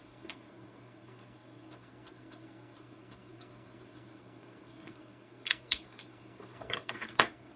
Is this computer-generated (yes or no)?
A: yes